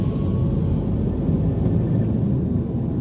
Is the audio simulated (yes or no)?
no